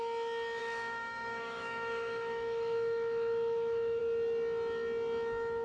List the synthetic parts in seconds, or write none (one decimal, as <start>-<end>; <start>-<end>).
0.6-4.0